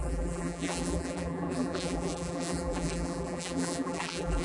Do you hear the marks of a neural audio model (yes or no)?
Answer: yes